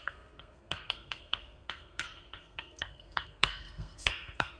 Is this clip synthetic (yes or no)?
yes